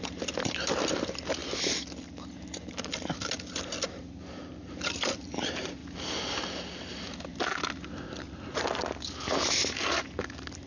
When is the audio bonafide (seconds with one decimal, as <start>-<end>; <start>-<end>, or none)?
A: 0.0-10.7